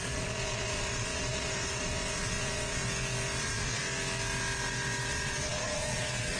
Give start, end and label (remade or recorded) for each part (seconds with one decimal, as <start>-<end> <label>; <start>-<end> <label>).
0.0-2.8 remade; 2.8-3.4 recorded; 3.4-3.8 remade; 3.8-5.1 recorded; 5.1-6.4 remade